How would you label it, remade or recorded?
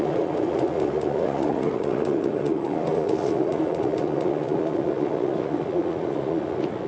remade